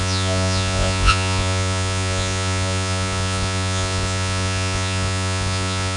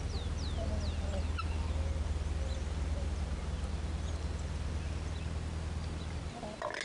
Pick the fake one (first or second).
first